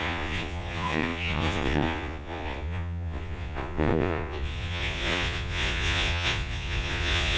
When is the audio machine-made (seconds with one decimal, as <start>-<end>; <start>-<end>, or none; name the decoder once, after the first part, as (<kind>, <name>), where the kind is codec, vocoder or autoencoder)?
0.0-7.4 (vocoder, Vocos)